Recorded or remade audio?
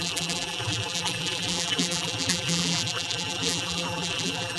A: remade